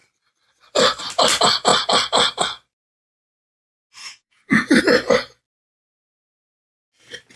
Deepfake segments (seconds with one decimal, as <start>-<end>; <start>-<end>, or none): 4.0-4.8